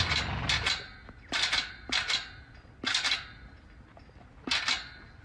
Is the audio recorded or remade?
recorded